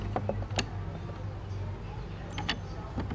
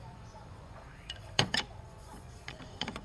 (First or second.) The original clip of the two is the first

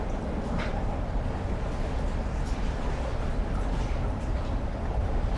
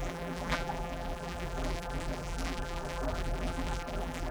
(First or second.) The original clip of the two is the first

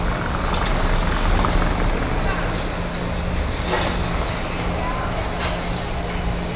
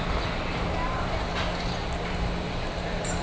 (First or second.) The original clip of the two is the first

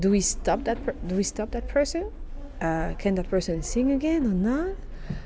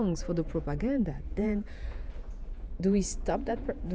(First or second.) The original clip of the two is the first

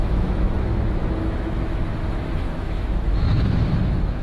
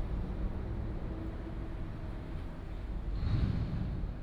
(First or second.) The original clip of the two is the second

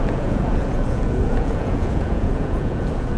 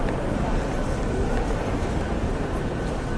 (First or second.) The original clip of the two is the second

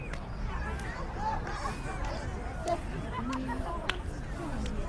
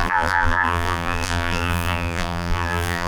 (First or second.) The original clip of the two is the first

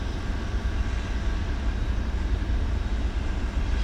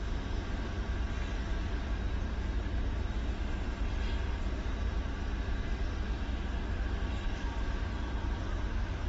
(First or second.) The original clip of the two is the second